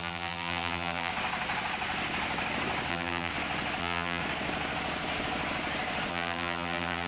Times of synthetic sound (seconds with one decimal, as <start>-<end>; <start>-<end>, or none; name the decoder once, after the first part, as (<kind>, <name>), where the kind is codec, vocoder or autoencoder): 0.0-1.1 (vocoder, BigVGAN v2); 2.9-3.3; 3.8-4.2; 6.1-7.1